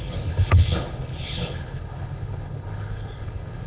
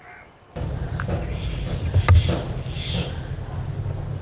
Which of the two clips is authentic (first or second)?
second